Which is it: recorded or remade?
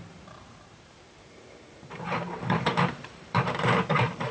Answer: remade